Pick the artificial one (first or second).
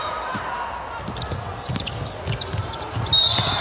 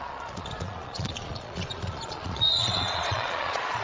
second